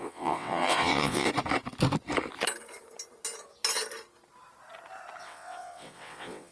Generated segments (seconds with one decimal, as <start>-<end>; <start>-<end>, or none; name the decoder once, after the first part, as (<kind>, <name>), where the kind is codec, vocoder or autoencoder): 0.0-1.3 (vocoder, WaveNeXt); 5.2-6.5